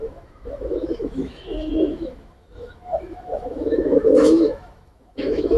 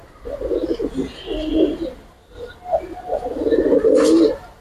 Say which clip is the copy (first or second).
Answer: first